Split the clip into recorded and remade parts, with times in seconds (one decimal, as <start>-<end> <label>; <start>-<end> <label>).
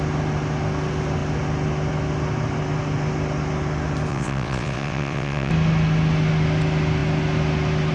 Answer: 0.0-4.1 recorded; 4.1-5.5 remade; 5.5-7.9 recorded